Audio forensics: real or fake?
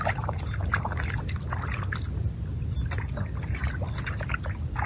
real